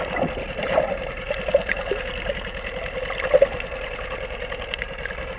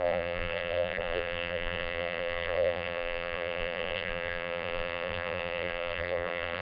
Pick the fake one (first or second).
second